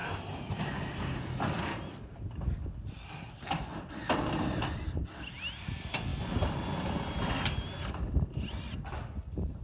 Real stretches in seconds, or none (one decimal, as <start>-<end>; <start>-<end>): 1.8-3.7; 5.2-9.6